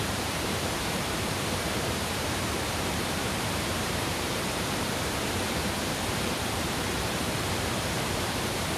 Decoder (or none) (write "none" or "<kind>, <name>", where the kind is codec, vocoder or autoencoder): vocoder, BigVGAN v2